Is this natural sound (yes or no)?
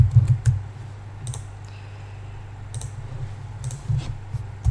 yes